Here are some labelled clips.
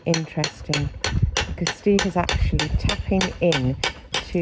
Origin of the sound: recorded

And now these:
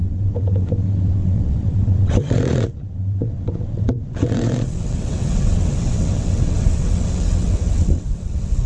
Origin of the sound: remade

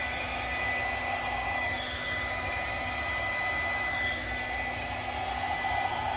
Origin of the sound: recorded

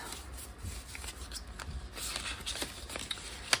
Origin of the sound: recorded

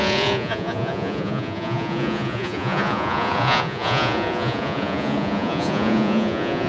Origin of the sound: remade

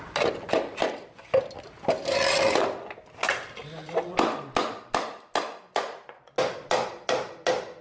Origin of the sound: recorded